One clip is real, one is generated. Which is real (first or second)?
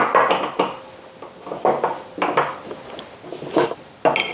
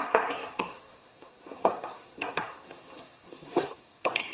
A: first